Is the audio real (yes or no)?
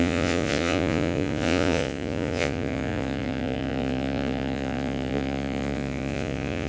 no